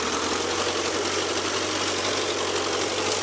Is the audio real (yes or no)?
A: yes